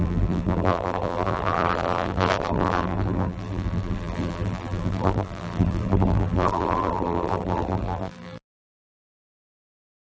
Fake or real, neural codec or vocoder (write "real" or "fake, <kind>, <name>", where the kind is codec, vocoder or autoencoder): fake, vocoder, BigVGAN v2